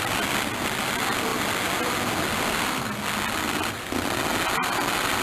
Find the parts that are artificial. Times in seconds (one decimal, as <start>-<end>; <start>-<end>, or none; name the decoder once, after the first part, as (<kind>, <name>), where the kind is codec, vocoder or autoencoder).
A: none